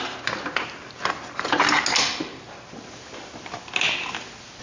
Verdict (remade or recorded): recorded